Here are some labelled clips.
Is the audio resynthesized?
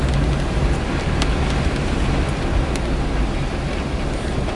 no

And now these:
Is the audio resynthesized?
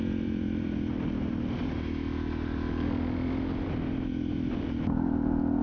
yes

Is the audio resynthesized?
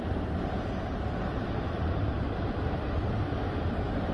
no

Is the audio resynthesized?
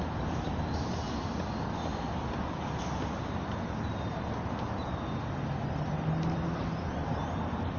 no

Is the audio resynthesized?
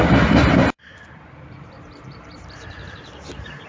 yes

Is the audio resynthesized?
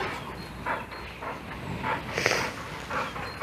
no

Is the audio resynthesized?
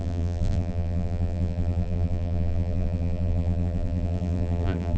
yes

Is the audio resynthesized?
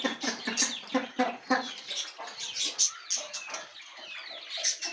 no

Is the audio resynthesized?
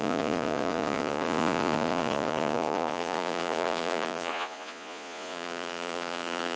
yes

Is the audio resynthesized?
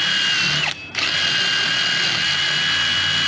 no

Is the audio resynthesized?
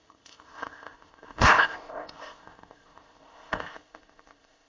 yes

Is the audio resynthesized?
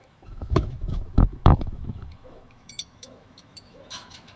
yes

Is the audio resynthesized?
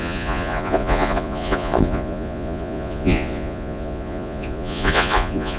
yes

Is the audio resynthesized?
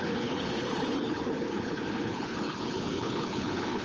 yes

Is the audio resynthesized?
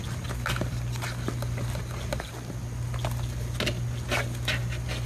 no